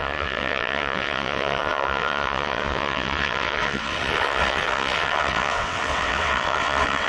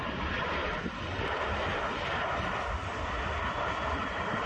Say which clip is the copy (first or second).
first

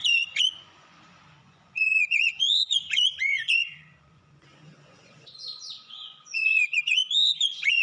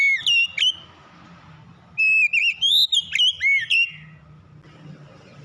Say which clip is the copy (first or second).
first